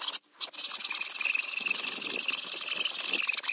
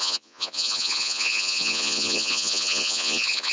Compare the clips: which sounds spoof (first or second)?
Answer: second